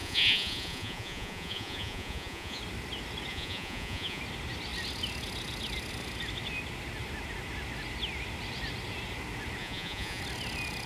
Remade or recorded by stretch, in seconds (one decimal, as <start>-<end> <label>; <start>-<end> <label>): 0.0-2.6 remade; 2.6-3.3 recorded; 3.3-4.2 remade; 4.2-9.6 recorded; 9.6-10.2 remade; 10.2-10.9 recorded